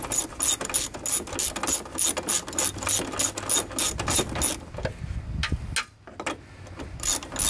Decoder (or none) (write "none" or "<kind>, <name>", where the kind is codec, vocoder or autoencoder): none